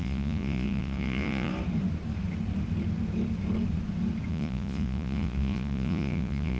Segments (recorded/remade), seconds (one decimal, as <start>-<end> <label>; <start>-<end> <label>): 0.0-1.5 remade; 1.5-4.3 recorded; 4.3-6.6 remade